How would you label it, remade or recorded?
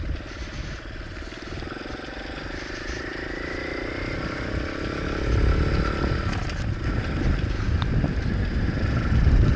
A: recorded